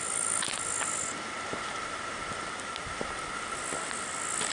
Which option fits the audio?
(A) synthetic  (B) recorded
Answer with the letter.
B